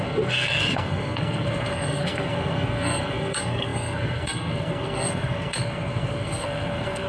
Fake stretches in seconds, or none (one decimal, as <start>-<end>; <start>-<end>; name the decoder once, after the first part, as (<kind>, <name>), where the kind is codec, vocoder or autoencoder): 0.0-7.1 (codec, SNAC)